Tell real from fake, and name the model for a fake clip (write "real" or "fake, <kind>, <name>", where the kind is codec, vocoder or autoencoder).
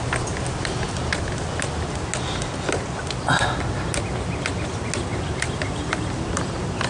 real